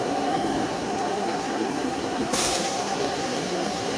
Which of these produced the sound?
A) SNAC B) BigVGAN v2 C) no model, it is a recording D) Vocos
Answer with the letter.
A